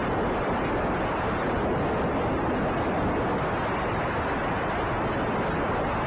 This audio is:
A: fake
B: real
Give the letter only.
B